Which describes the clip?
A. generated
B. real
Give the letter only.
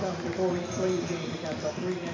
B